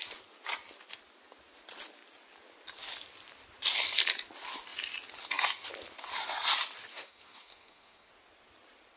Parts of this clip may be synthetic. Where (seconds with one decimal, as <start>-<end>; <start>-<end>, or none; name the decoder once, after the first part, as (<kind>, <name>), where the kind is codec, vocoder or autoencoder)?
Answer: 6.9-8.1 (codec, SNAC)